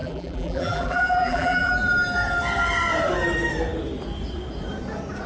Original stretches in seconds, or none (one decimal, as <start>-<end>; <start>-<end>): 1.7-5.3